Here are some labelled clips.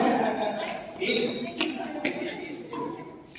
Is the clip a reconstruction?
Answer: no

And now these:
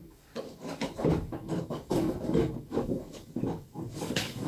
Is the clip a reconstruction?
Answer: yes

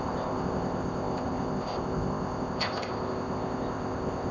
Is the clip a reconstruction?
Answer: yes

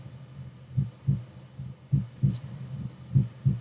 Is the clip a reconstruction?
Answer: no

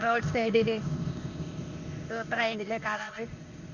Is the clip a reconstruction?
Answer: yes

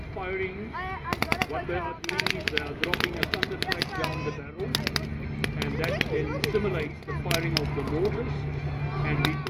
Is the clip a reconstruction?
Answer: no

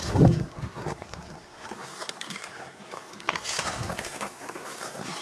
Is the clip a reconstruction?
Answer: yes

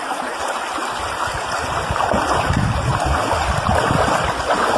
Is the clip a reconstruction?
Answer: no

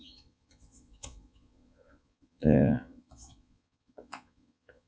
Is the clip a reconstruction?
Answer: yes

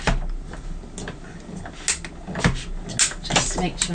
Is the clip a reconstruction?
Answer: no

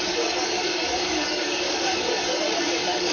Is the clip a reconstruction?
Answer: yes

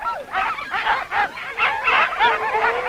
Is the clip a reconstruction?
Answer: no